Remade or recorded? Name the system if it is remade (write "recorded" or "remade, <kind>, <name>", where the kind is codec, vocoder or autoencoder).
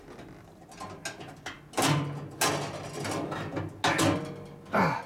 recorded